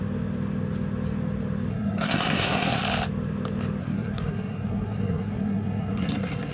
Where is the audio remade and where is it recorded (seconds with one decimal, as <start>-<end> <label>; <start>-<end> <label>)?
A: 0.0-1.7 recorded; 1.7-2.8 remade; 2.8-3.8 recorded; 3.8-6.5 remade